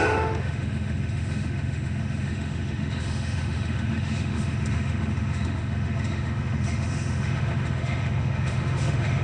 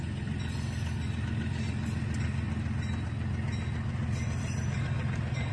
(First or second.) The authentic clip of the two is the second